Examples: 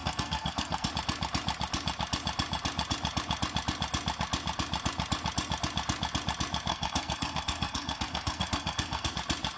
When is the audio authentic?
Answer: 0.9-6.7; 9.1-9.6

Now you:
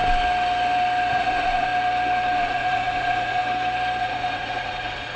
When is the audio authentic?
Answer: 0.0-1.1; 1.7-2.4; 3.4-4.0

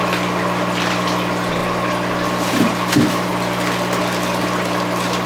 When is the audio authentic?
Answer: 1.6-2.5; 3.3-4.0

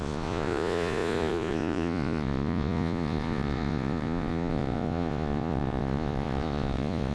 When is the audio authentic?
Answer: none

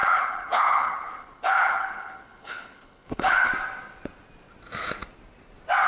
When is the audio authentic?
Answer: 3.5-5.9